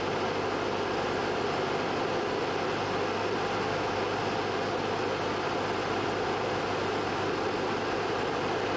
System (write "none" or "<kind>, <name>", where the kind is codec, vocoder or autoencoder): none